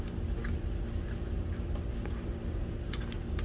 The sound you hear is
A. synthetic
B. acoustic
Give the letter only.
B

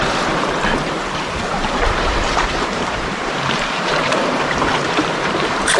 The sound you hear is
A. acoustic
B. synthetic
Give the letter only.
B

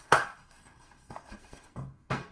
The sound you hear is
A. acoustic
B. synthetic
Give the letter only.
B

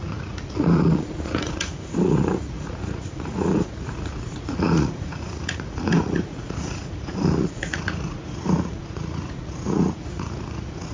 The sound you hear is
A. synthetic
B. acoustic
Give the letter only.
A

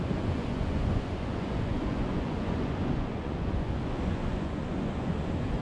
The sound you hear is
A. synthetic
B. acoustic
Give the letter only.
A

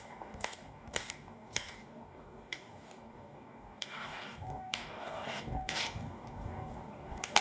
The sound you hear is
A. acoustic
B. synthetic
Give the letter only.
B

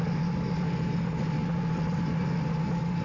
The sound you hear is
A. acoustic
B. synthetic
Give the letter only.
A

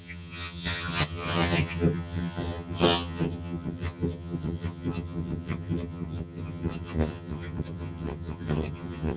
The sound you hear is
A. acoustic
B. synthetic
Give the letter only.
B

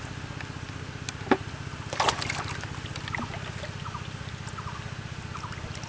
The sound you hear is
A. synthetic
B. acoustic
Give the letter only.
B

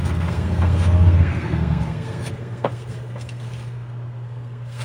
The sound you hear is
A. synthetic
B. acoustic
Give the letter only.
A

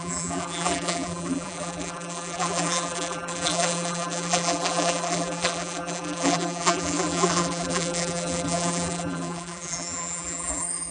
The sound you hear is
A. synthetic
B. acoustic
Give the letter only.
A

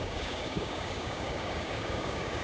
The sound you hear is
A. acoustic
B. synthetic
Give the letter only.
B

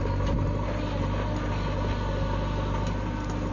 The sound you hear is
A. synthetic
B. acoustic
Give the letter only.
B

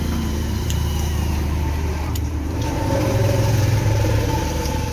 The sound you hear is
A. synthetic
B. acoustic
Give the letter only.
A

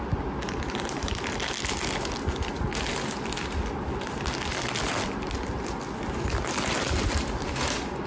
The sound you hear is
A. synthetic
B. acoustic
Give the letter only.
B